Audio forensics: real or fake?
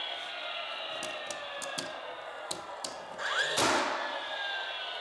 real